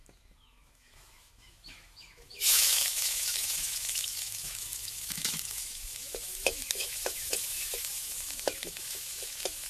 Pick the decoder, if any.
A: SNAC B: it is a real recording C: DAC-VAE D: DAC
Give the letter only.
C